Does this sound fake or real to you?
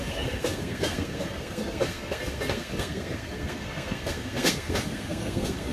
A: fake